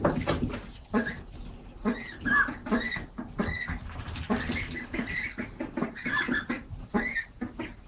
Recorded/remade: recorded